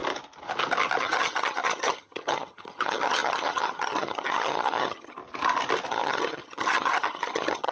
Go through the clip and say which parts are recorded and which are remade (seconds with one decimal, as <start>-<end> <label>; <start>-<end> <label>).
0.0-1.0 recorded; 1.0-5.2 remade; 5.2-5.9 recorded; 5.9-7.7 remade